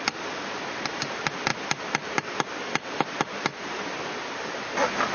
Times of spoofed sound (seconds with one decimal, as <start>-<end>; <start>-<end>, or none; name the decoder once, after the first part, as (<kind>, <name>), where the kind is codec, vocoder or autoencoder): 1.5-4.6 (vocoder, BigVGAN v2)